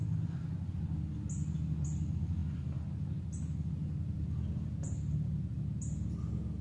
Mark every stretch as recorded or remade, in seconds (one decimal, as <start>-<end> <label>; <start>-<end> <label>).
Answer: 0.0-6.6 recorded